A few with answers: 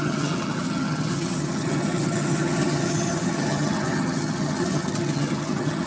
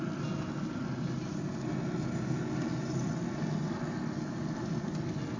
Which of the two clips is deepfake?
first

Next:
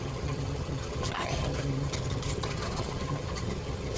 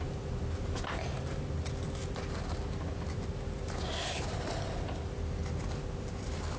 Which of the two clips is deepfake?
first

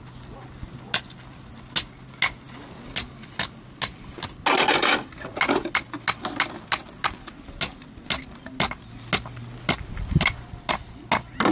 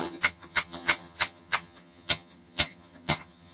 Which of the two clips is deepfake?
second